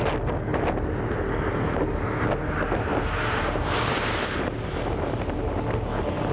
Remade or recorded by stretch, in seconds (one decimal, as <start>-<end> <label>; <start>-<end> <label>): 0.0-6.3 recorded